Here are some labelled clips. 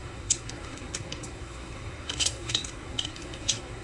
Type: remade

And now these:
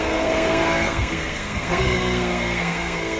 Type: remade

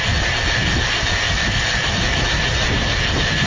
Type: recorded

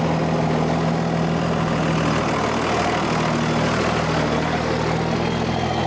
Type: recorded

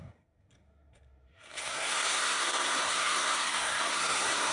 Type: remade